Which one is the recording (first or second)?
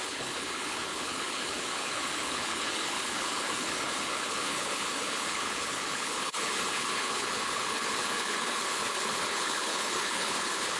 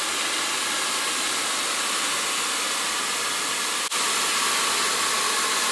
second